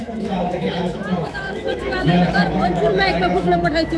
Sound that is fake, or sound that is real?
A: fake